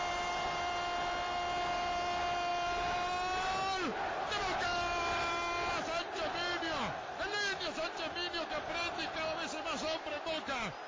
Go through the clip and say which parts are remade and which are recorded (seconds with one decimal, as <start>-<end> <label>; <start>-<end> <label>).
0.0-10.9 recorded